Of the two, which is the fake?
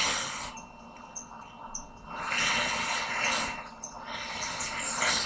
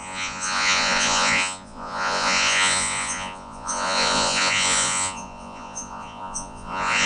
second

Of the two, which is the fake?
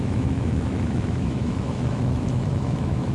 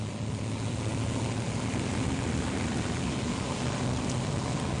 first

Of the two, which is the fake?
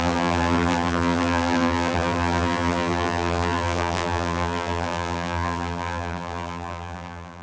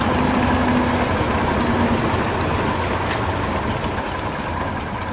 first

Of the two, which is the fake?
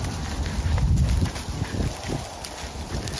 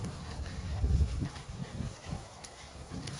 second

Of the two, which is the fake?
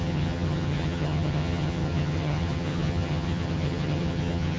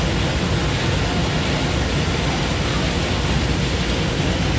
first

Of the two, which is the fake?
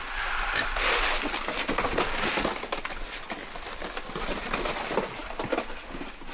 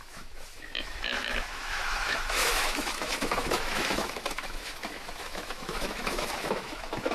second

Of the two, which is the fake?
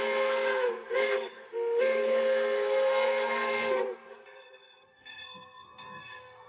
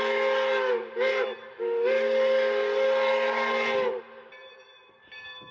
first